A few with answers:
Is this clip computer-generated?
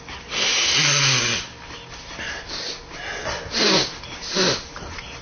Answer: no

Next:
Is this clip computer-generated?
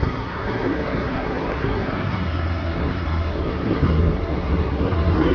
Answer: yes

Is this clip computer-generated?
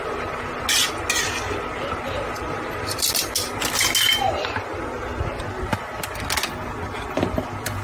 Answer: no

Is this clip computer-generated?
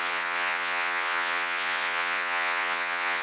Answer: yes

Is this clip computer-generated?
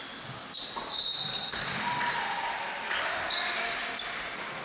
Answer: no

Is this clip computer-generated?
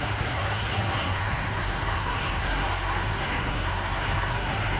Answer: yes